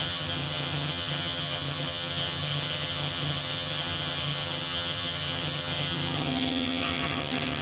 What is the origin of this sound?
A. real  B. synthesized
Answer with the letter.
B